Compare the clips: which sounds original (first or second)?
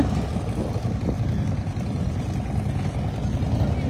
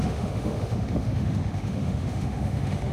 first